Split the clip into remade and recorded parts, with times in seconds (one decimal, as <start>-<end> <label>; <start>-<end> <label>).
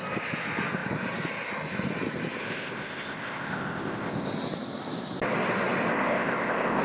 0.0-2.4 recorded; 2.4-4.3 remade; 4.3-5.9 recorded; 5.9-6.8 remade